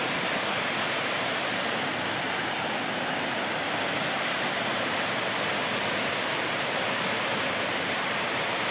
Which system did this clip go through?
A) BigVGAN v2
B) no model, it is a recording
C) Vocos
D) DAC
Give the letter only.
B